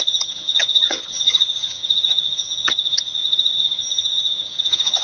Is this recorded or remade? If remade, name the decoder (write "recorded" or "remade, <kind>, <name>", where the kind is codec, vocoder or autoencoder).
remade, vocoder, HiFi-GAN